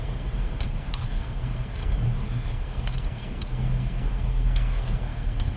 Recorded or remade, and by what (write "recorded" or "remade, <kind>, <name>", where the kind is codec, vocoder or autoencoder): remade, codec, SNAC